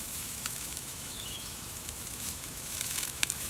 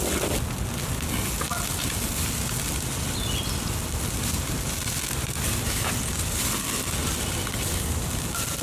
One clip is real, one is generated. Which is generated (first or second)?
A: first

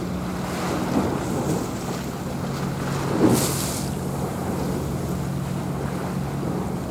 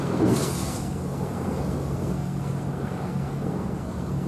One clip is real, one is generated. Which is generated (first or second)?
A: second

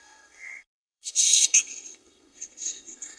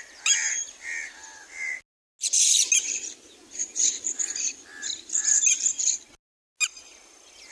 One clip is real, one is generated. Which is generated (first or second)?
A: first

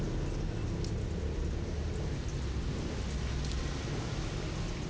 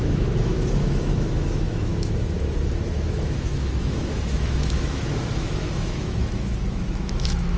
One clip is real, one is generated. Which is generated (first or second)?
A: second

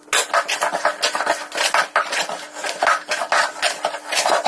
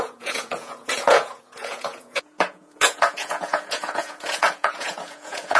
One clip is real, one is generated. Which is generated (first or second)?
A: second